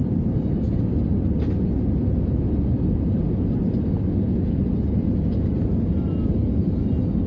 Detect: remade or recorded recorded